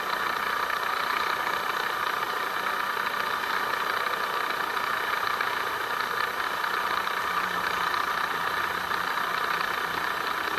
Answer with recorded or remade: recorded